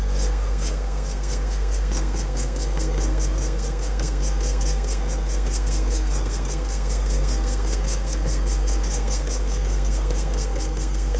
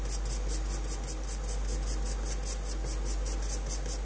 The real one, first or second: second